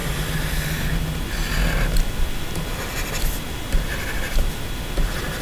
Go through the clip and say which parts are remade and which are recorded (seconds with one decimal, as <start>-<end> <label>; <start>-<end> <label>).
0.0-5.4 recorded